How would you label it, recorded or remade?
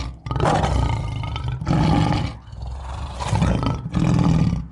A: recorded